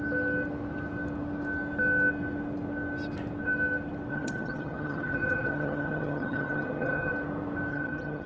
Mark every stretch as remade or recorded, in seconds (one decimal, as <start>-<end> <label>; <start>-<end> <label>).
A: 0.0-4.1 recorded; 4.1-7.1 remade; 7.1-7.7 recorded; 7.7-8.3 remade